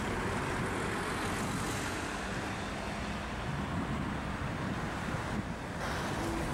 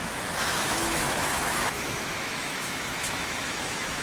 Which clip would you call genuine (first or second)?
first